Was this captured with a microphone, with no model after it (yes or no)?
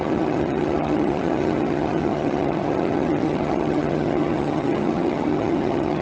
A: no